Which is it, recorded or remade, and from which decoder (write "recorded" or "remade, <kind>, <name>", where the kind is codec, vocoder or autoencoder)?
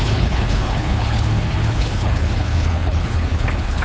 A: remade, codec, HILCodec